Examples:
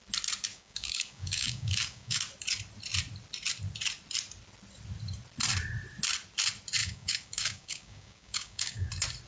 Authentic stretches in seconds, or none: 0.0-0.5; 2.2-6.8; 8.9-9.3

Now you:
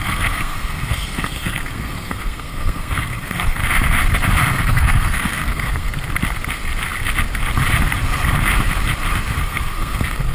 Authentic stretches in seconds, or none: 3.6-4.6; 5.9-9.4